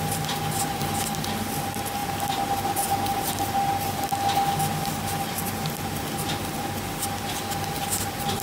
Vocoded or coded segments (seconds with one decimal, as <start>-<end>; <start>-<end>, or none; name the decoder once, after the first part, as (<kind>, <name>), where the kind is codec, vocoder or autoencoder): none